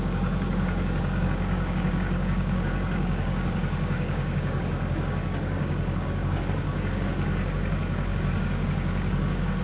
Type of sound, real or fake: fake